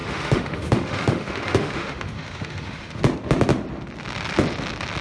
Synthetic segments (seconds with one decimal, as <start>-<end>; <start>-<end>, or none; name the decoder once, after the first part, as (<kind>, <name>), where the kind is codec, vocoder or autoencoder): 0.0-3.0 (autoencoder, DAC-VAE)